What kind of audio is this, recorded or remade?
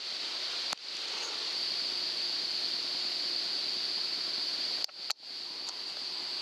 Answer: recorded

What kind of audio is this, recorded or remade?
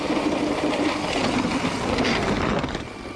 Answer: recorded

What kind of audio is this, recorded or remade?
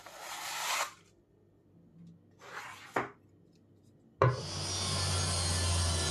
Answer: recorded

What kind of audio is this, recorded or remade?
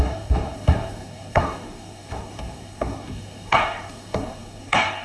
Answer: remade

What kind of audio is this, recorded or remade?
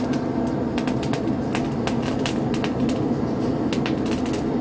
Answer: recorded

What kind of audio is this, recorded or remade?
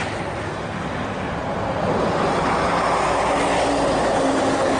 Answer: recorded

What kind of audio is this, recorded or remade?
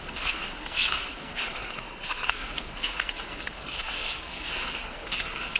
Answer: remade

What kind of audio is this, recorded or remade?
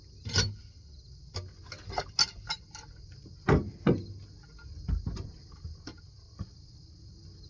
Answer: recorded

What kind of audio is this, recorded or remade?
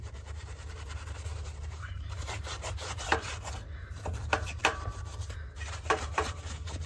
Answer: remade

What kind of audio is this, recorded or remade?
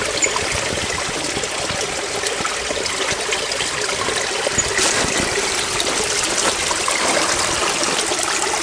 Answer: recorded